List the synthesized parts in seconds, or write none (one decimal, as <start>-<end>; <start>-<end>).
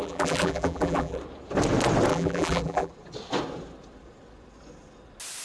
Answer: 0.0-1.2; 2.1-2.9